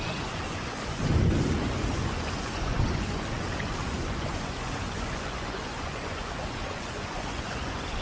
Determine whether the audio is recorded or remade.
remade